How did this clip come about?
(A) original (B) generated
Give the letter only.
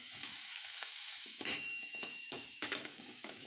B